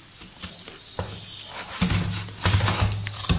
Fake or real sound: real